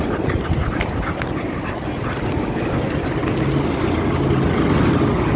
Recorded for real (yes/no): yes